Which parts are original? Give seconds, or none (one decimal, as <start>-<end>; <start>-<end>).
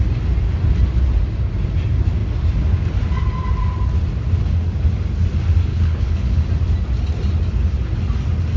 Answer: 0.0-5.7; 6.4-8.6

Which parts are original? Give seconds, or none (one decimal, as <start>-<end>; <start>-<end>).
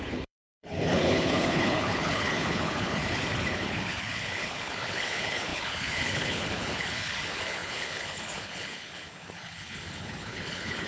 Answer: none